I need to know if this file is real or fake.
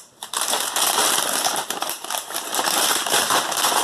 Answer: fake